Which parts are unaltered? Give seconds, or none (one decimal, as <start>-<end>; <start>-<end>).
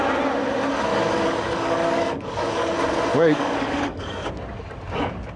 0.0-0.9; 2.7-3.1; 4.3-5.4